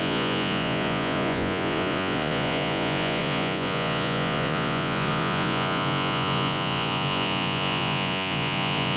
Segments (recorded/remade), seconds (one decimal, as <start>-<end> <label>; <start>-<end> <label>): 0.0-9.0 remade